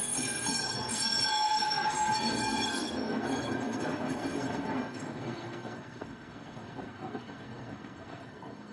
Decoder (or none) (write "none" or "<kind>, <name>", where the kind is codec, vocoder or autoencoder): codec, SNAC